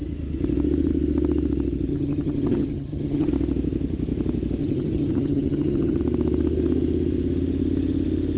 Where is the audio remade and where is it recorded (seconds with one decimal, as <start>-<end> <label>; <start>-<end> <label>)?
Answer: 0.0-1.9 recorded; 1.9-3.3 remade; 3.3-4.6 recorded; 4.6-6.0 remade; 6.0-8.4 recorded